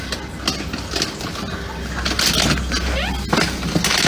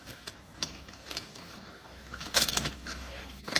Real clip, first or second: first